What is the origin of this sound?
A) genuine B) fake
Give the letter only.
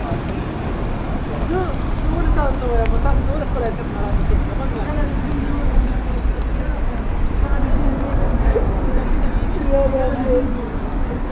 A